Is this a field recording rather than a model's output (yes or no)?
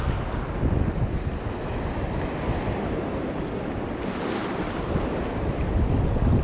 yes